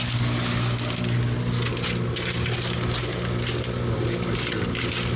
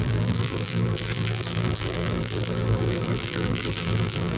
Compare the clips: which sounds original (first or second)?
first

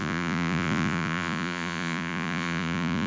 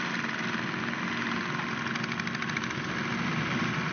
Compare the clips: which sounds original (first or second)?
second